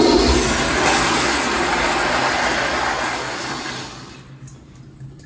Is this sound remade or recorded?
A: recorded